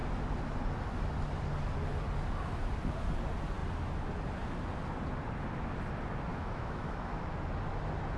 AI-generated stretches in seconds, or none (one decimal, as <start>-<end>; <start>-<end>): 6.3-7.1